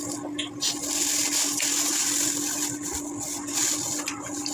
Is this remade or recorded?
recorded